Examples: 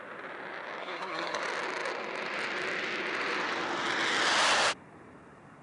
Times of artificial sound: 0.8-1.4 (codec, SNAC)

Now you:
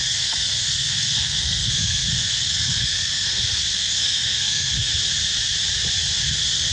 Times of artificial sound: 0.0-4.9 (codec, SNAC); 6.2-6.7